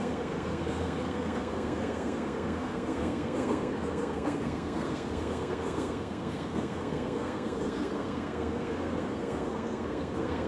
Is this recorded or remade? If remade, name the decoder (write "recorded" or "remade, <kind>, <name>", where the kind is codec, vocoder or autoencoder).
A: remade, codec, SNAC